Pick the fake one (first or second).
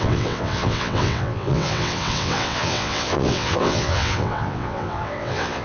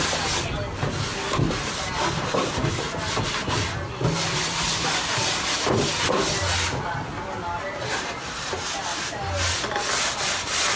first